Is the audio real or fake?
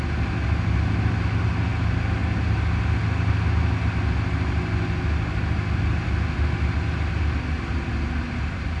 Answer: real